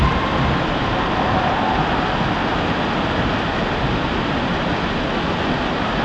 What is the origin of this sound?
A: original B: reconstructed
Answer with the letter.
A